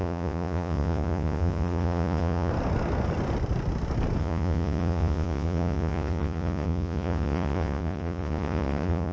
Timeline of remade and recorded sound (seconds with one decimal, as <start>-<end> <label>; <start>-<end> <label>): 0.0-2.5 remade; 2.5-4.2 recorded; 4.2-9.1 remade